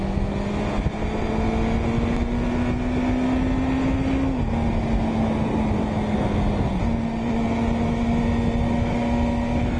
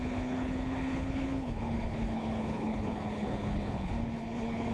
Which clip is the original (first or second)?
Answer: first